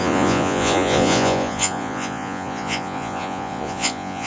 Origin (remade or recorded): remade